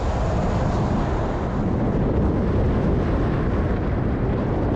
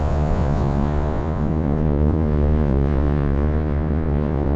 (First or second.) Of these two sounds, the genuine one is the first